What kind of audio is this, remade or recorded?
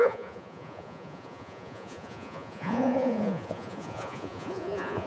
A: remade